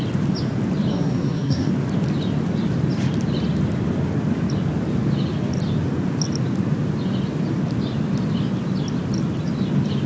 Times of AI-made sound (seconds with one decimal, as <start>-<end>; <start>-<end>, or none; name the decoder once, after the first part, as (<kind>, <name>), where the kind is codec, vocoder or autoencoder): 0.9-1.7 (codec, SNAC)